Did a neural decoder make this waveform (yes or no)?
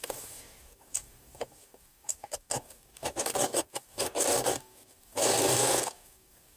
yes